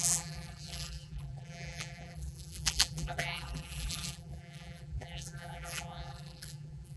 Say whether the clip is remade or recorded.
remade